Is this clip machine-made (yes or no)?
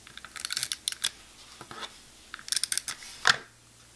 no